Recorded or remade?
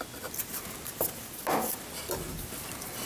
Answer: recorded